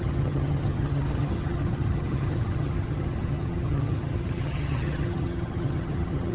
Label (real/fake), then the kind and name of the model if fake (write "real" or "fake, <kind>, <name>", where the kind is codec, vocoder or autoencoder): fake, vocoder, HiFi-GAN